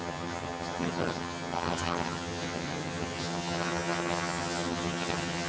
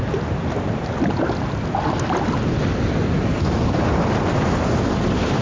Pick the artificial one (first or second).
first